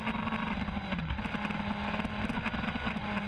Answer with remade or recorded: recorded